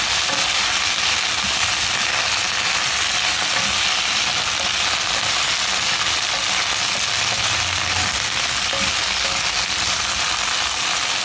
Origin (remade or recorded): recorded